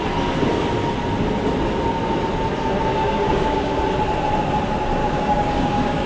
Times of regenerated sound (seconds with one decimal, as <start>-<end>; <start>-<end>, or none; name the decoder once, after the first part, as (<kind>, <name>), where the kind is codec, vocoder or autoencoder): 2.9-3.8 (codec, DAC); 5.0-6.1